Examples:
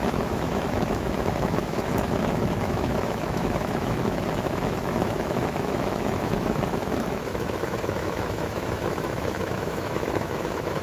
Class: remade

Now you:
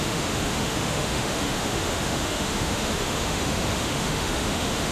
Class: remade